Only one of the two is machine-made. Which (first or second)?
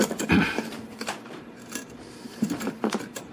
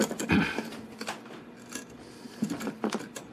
first